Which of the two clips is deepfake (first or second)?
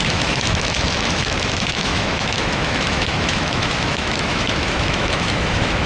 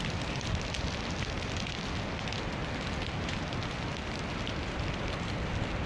first